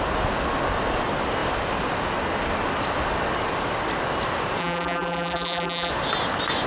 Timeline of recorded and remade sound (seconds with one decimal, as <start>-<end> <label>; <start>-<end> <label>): 0.0-4.6 recorded; 4.6-5.9 remade; 5.9-6.7 recorded